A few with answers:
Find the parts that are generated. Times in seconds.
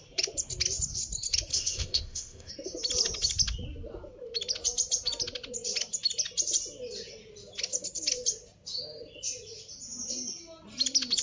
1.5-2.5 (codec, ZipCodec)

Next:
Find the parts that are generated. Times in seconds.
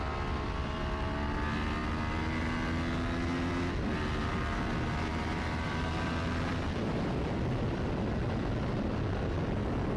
5.1-5.7 (vocoder, BigVGAN v2); 6.5-7.8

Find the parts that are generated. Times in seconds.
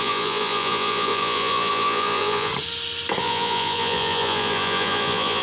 0.0-2.5 (vocoder, Vocos); 3.2-5.4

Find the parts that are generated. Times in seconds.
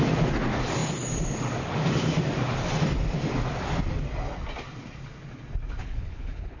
5.8-6.6 (codec, HILCodec)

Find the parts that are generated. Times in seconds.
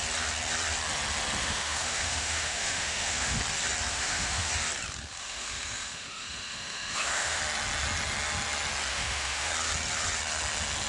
1.4-3.4 (autoencoder, DAC-VAE); 3.9-4.5; 5.2-7.4; 8.9-9.5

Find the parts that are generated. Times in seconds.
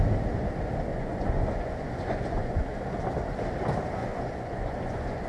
0.9-2.8 (vocoder, Vocos); 4.0-5.3